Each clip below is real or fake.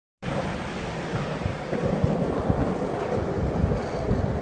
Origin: real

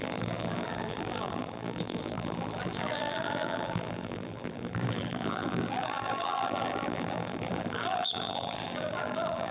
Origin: fake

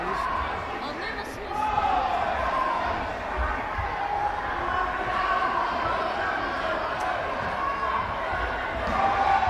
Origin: real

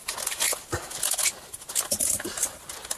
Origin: real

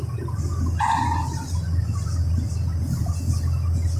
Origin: real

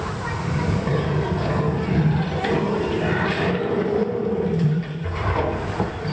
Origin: fake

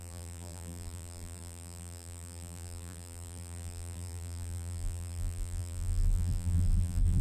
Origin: fake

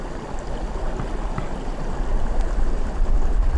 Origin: real